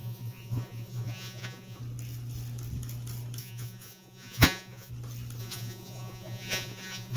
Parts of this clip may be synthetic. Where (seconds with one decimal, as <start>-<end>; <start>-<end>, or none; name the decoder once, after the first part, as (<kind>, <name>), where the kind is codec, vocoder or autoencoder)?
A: 0.0-1.8 (vocoder, Vocos); 3.4-4.9; 5.4-7.2

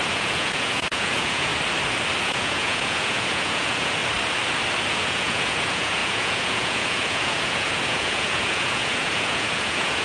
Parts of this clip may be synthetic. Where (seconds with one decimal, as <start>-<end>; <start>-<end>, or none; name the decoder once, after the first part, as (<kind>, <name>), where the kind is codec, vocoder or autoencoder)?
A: 0.0-1.5 (vocoder, Vocos); 2.2-4.0; 4.9-10.0

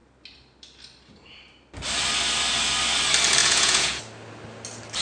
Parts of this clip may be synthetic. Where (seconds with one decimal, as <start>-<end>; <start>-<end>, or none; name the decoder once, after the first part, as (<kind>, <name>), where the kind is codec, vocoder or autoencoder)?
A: 3.4-4.0 (vocoder, Vocos)

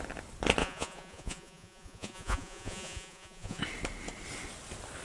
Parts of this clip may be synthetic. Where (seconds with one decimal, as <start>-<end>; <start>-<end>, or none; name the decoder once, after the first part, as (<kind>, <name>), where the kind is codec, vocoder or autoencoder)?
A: 0.6-3.6 (vocoder, Vocos)

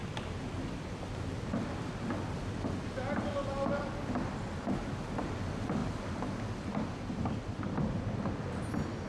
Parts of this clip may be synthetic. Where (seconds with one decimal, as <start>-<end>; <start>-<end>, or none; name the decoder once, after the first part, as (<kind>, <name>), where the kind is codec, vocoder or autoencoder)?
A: none

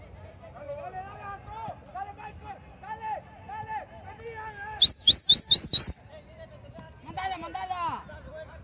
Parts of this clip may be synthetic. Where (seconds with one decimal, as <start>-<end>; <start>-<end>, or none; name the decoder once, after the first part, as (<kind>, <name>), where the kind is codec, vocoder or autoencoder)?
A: none

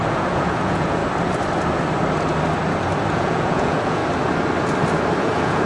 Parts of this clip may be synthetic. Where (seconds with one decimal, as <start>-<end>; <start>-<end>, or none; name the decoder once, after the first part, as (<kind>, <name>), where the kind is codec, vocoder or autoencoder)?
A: 0.0-1.0 (vocoder, Vocos); 3.1-4.0; 5.2-5.7